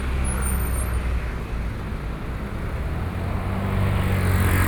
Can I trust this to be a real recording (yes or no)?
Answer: yes